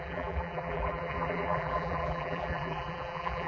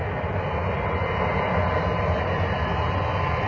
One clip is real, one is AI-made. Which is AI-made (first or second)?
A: first